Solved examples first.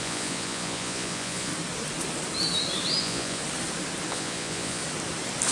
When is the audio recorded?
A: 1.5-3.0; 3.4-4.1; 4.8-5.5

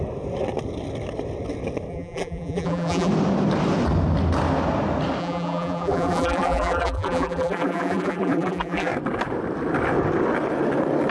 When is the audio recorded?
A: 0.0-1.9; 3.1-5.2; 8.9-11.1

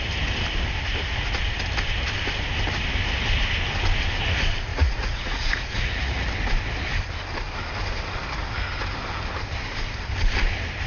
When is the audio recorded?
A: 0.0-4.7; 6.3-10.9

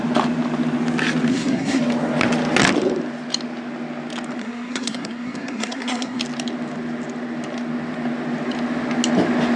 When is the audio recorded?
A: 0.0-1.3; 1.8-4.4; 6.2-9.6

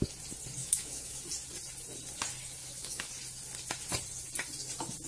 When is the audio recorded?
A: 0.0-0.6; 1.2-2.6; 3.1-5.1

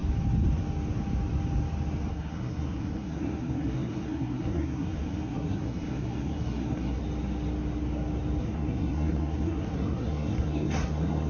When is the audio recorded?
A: 0.0-2.1; 7.0-8.4